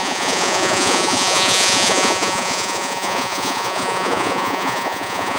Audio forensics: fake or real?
fake